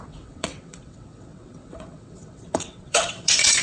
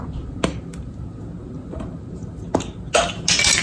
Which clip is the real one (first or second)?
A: second